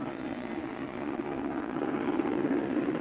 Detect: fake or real fake